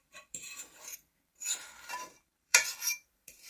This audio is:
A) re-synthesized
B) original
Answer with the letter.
A